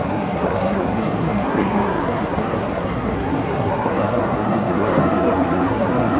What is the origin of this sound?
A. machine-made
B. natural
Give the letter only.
A